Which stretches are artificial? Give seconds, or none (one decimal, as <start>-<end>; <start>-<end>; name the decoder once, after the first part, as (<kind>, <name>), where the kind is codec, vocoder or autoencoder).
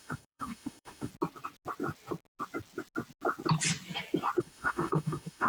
0.0-1.1 (autoencoder, DAC-VAE); 4.4-5.5